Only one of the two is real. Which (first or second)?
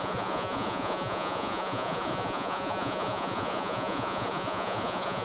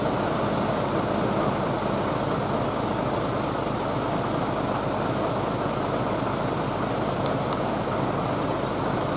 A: second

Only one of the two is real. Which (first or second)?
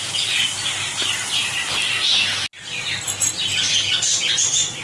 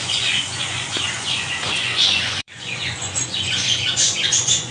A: first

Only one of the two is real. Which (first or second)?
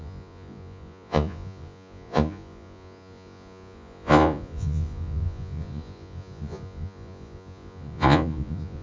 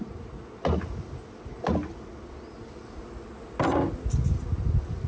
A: second